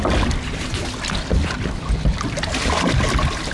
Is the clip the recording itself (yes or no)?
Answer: yes